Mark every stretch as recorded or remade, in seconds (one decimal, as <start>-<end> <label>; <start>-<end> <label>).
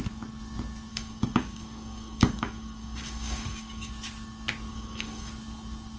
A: 0.0-0.9 recorded; 0.9-3.9 remade; 3.9-4.7 recorded; 4.7-5.3 remade; 5.3-6.0 recorded